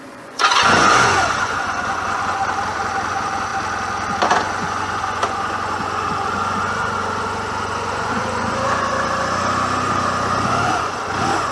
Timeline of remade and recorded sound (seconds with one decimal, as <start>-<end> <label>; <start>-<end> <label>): 0.0-2.4 remade; 2.4-3.1 recorded; 3.1-3.5 remade; 3.5-4.2 recorded; 4.2-11.5 remade